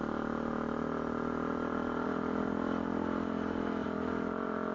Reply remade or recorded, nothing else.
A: recorded